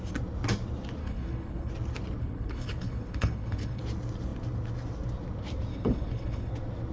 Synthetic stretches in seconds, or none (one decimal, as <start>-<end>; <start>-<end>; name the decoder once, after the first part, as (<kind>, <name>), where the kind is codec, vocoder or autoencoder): 1.0-1.7 (codec, HILCodec); 2.2-3.8; 5.7-6.5